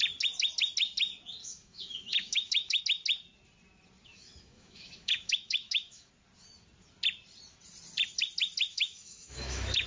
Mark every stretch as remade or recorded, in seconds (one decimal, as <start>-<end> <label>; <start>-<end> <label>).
0.0-1.4 recorded; 1.4-2.8 remade; 2.8-4.1 recorded; 4.1-6.1 remade; 6.1-8.7 recorded; 8.7-9.9 remade